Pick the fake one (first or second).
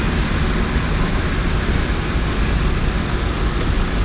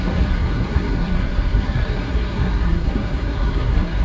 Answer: second